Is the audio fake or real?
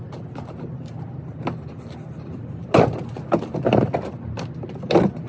real